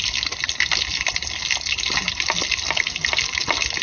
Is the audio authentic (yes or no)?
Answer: yes